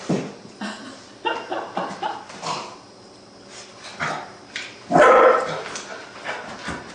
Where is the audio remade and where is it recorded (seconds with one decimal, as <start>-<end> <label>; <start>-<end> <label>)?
0.0-1.5 recorded; 1.5-3.4 remade; 3.4-3.9 recorded; 3.9-5.7 remade; 5.7-6.9 recorded